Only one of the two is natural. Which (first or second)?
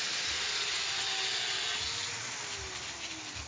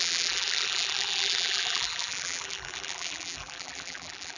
first